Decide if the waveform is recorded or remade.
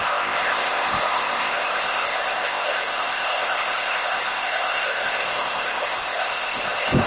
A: remade